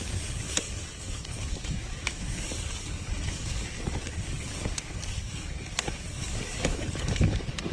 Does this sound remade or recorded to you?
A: remade